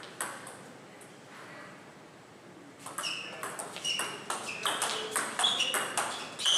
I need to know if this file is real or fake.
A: real